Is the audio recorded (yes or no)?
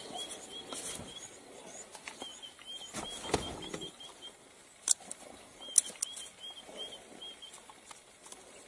yes